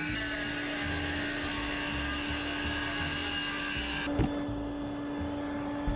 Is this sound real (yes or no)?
yes